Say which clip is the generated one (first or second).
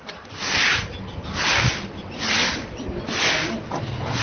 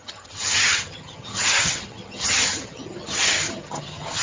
second